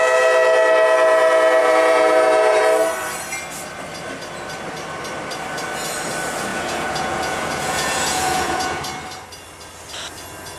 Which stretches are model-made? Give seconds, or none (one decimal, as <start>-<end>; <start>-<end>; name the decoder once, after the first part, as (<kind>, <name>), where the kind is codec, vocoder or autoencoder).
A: 1.6-2.6 (vocoder, Vocos); 6.5-8.8